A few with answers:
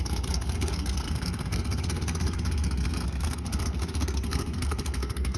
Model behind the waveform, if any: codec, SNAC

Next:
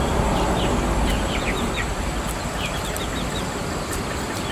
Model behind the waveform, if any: none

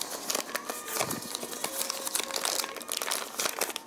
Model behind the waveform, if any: none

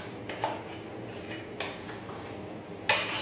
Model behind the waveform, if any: none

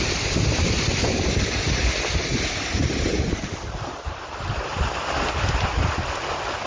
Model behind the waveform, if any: none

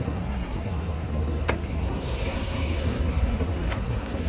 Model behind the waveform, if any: codec, SNAC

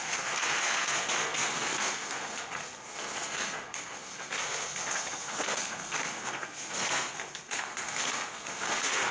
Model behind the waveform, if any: codec, SNAC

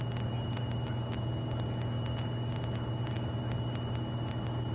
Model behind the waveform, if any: none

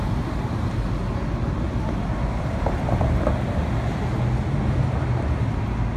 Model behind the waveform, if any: none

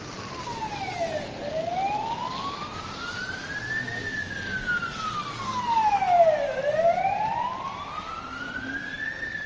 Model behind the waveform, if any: none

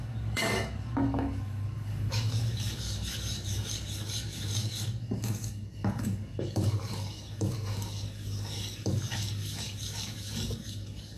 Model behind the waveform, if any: codec, DAC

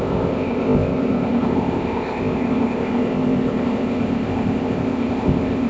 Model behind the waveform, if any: codec, ZipCodec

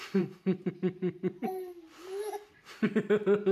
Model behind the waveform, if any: vocoder, BigVGAN v2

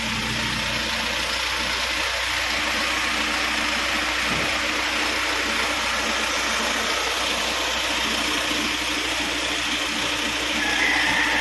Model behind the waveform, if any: none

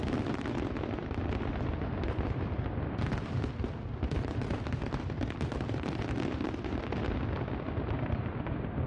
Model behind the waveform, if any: none